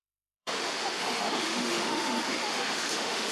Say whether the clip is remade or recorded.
remade